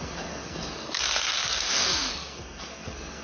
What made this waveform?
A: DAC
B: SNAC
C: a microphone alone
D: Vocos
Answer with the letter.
B